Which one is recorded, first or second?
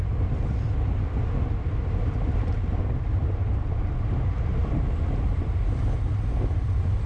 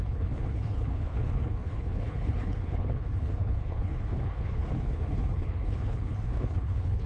first